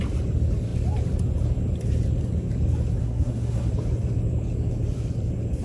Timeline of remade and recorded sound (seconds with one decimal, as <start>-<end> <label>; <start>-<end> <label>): 0.0-3.0 recorded; 3.0-3.7 remade; 3.7-5.6 recorded